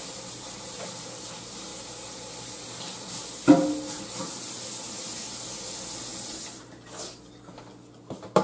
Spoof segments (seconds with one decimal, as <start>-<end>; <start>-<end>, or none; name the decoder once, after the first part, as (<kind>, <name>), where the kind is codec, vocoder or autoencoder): none